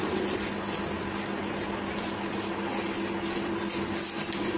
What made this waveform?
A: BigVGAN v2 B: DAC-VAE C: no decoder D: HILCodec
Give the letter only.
C